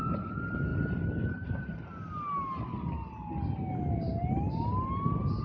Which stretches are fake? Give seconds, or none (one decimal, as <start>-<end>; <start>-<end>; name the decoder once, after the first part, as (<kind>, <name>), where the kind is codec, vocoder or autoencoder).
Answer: none